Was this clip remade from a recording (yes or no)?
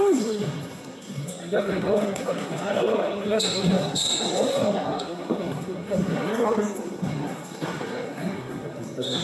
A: yes